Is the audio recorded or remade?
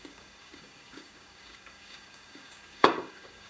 remade